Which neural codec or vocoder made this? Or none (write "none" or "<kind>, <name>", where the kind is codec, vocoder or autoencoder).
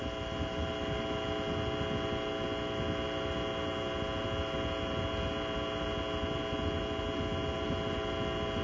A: none